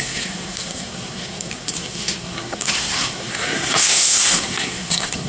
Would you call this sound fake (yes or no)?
yes